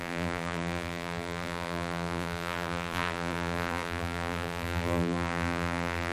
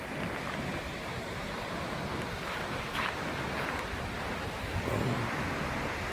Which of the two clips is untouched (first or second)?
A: second